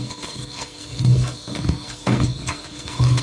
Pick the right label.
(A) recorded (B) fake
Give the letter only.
B